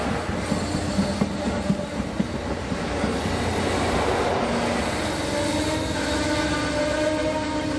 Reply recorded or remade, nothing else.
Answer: recorded